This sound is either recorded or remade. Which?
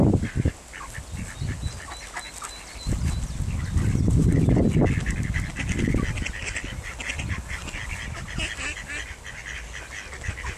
recorded